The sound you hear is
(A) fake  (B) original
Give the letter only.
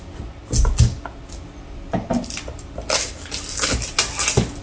B